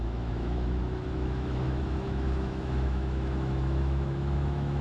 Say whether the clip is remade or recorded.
remade